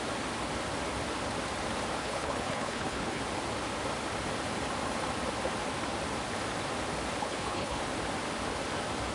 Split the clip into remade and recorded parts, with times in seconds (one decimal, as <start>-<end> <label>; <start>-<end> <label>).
0.0-2.0 recorded; 2.0-3.2 remade; 3.2-7.2 recorded; 7.2-7.8 remade; 7.8-9.1 recorded